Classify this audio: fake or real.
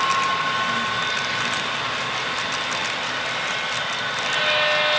real